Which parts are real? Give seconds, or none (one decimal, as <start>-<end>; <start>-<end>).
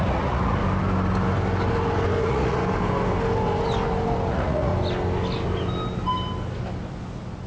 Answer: 0.6-2.2; 2.6-4.3; 4.7-7.5